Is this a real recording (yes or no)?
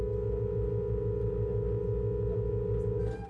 yes